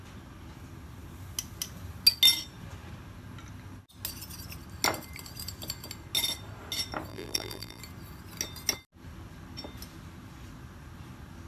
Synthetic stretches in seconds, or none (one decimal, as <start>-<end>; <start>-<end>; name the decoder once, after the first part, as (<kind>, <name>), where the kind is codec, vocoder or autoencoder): 7.1-7.8 (vocoder, BigVGAN v2)